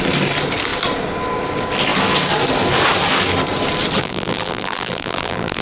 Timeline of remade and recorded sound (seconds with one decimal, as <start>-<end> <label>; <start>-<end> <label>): 0.0-4.0 recorded; 4.0-5.6 remade